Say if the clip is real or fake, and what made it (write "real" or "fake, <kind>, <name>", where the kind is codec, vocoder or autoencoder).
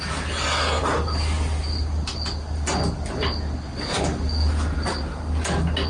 real